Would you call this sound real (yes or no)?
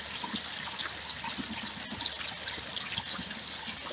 yes